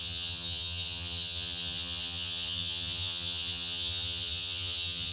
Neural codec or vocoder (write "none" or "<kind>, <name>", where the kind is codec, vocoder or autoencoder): vocoder, HiFi-GAN